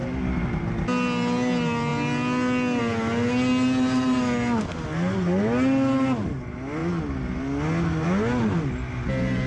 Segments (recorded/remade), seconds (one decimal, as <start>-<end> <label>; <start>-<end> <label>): 0.0-9.5 recorded